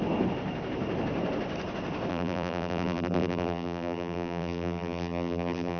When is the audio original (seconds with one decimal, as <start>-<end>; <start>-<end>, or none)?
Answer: 0.0-2.1